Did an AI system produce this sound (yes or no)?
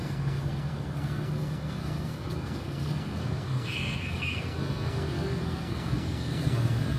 yes